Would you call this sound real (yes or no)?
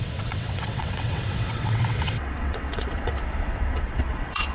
no